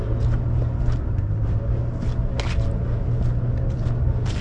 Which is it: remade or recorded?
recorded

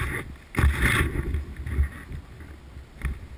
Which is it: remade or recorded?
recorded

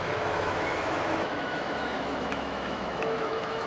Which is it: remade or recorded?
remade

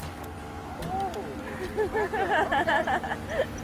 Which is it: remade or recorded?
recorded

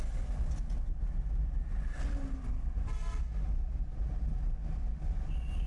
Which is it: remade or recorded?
recorded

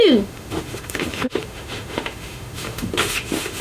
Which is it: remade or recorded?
remade